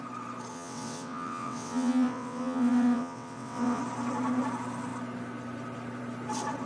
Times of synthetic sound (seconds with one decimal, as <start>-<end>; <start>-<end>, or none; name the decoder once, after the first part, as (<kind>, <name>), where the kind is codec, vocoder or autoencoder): 0.5-3.8 (vocoder, WaveNeXt)